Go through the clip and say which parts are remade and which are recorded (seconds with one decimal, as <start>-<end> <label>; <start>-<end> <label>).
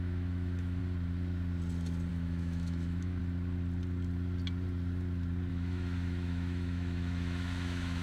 0.0-0.8 remade; 0.8-2.1 recorded; 2.1-3.2 remade; 3.2-5.5 recorded; 5.5-8.0 remade